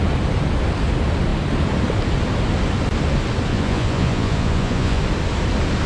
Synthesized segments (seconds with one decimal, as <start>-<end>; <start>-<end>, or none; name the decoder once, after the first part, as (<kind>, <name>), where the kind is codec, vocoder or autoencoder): 3.5-5.0 (vocoder, Vocos)